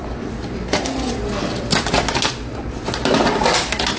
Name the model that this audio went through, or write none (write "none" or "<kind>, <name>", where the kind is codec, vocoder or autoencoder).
none